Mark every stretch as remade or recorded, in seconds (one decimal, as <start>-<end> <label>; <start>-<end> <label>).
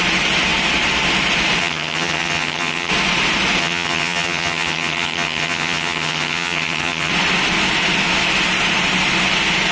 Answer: 0.0-1.6 recorded; 1.6-2.9 remade; 2.9-3.6 recorded; 3.6-7.1 remade; 7.1-9.7 recorded